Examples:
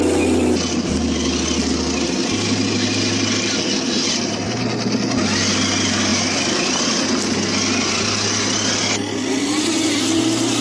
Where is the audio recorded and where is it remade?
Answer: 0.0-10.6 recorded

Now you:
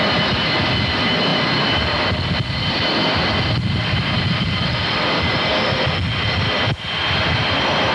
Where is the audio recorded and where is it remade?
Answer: 0.0-1.3 recorded; 1.3-5.2 remade; 5.2-7.9 recorded

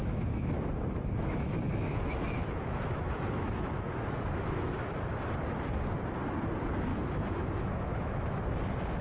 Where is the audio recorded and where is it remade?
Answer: 0.0-5.2 remade; 5.2-6.9 recorded; 6.9-8.6 remade; 8.6-9.0 recorded

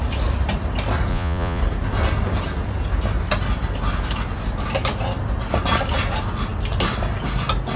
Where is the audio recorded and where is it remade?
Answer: 0.0-1.1 recorded; 1.1-1.6 remade; 1.6-7.8 recorded

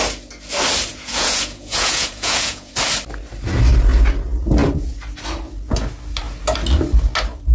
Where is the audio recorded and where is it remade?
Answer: 0.0-0.9 recorded; 0.9-2.7 remade; 2.7-7.5 recorded

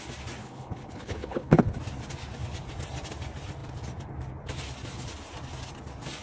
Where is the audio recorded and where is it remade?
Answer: 0.0-0.4 recorded; 0.4-1.6 remade; 1.6-6.2 recorded

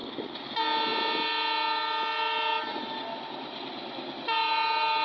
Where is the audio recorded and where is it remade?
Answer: 0.0-5.0 recorded

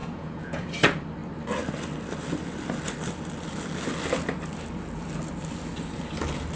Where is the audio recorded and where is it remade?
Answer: 0.0-0.7 remade; 0.7-6.6 recorded